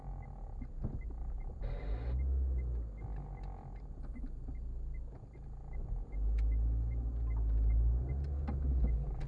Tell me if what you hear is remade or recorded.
recorded